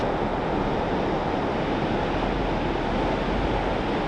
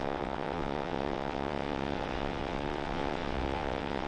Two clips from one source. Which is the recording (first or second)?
first